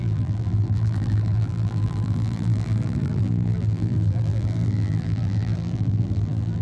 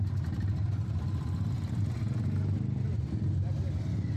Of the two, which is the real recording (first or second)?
second